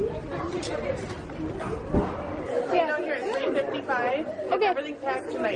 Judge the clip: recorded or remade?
recorded